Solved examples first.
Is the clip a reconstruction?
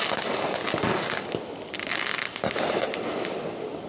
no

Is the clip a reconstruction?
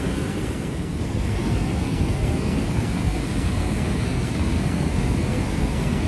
yes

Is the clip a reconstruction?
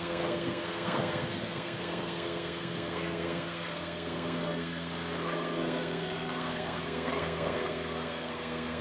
yes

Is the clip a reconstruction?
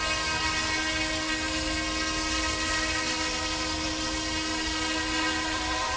no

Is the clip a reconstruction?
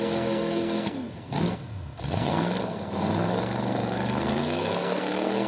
yes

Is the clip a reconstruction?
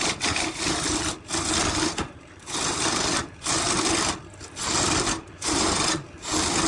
no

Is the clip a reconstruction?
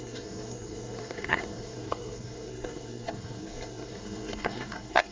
yes